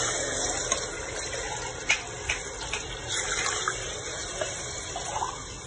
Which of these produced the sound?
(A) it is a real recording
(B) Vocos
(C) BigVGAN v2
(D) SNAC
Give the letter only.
A